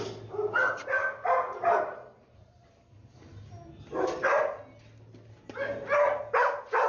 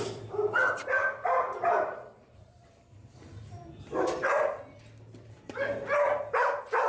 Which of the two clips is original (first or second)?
first